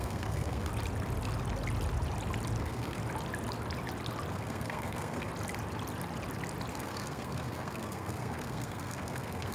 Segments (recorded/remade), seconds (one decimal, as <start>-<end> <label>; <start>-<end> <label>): 0.0-0.7 remade; 0.7-2.6 recorded; 2.6-3.0 remade; 3.0-4.3 recorded; 4.3-5.3 remade; 5.3-6.7 recorded; 6.7-9.5 remade